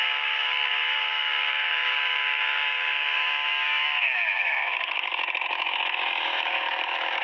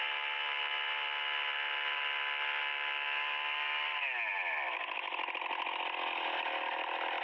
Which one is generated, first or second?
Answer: first